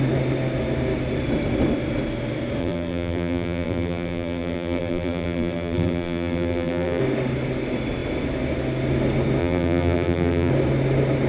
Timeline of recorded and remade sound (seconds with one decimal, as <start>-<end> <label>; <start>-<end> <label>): 0.0-2.6 recorded; 2.6-7.0 remade; 7.0-9.4 recorded; 9.4-10.5 remade; 10.5-11.3 recorded